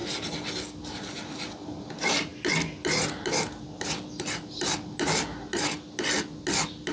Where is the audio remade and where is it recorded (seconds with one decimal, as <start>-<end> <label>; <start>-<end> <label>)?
0.0-6.9 recorded